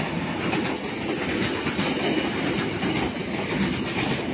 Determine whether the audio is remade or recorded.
recorded